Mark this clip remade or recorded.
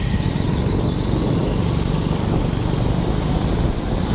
recorded